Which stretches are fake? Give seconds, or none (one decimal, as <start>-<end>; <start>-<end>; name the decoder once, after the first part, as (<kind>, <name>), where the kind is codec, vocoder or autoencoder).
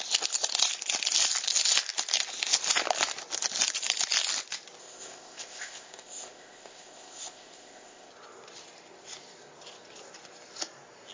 4.8-8.1 (codec, ZipCodec)